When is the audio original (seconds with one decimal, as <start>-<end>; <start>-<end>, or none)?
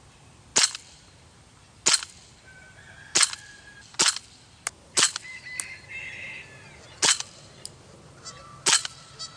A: 0.0-9.4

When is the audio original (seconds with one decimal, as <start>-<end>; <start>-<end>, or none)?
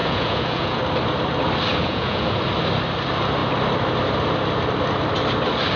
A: 0.8-1.7; 2.4-5.8